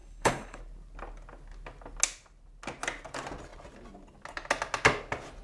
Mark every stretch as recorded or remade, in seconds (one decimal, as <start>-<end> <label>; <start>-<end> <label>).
0.0-0.6 remade; 0.6-5.4 recorded